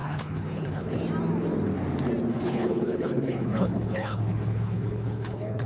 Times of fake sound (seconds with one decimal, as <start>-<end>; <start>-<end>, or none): 0.0-1.0; 2.3-5.7

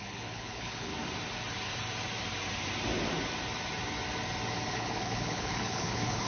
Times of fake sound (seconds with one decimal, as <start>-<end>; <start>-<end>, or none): 0.0-0.9; 4.7-6.3